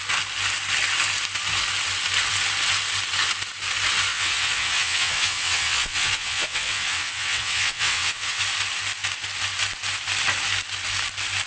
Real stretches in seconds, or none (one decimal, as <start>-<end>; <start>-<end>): 0.0-4.1; 8.4-11.5